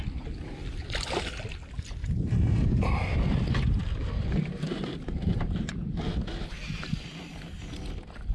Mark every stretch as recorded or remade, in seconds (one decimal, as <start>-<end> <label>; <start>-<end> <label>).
0.0-2.0 recorded; 2.0-3.4 remade; 3.4-3.8 recorded; 3.8-6.5 remade; 6.5-7.3 recorded; 7.3-7.8 remade; 7.8-8.3 recorded